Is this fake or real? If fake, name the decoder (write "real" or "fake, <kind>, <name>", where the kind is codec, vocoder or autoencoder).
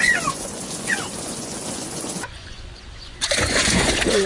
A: fake, vocoder, Vocos